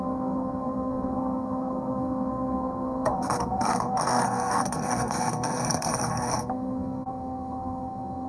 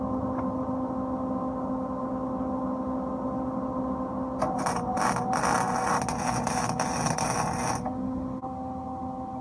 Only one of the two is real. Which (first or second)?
second